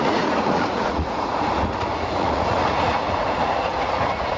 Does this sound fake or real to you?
fake